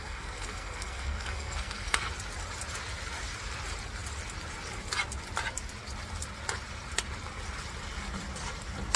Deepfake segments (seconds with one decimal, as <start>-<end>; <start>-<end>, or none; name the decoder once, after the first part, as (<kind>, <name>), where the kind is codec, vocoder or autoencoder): 0.0-2.1 (codec, SNAC)